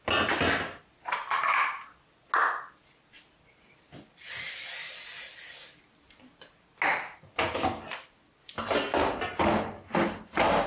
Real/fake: real